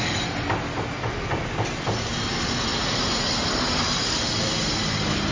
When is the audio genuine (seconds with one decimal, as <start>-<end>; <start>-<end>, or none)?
0.0-5.3

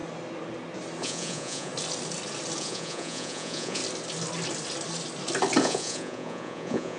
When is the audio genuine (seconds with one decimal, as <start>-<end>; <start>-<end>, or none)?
0.0-1.0; 1.7-2.6; 3.8-5.6

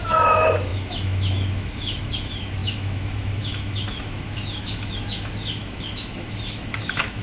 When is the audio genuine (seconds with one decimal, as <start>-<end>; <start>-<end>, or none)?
none

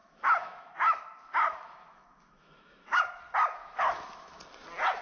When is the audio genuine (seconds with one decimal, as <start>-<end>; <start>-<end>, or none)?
3.0-3.6; 4.4-5.0

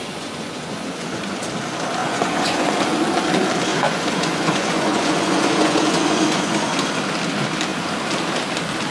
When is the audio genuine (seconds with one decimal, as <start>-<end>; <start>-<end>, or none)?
1.4-2.0; 2.7-3.7; 7.0-8.9